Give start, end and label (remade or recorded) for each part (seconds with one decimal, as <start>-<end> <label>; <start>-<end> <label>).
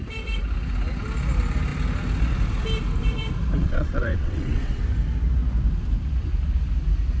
0.0-3.6 recorded; 3.6-4.8 remade; 4.8-7.2 recorded